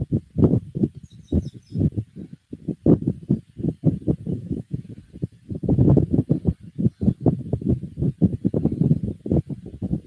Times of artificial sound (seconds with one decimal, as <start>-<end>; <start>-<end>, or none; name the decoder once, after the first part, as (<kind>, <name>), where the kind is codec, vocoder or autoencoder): 4.3-5.0 (autoencoder, DAC-VAE)

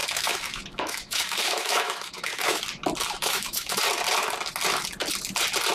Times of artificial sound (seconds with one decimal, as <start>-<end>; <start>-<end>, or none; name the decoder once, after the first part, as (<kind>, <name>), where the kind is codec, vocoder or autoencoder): 0.0-2.6 (autoencoder, DAC-VAE); 3.2-3.8

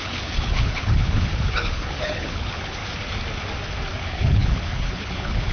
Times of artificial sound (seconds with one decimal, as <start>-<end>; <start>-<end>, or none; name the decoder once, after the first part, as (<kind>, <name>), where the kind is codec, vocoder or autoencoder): 0.0-2.8 (codec, HILCodec); 4.0-5.5

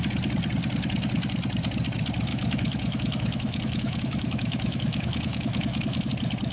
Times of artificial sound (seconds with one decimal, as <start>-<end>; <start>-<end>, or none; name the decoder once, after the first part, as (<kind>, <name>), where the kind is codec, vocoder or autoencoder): 2.3-6.1 (autoencoder, DAC-VAE)